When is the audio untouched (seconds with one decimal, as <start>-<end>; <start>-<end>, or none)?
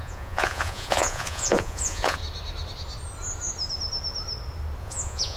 2.2-4.8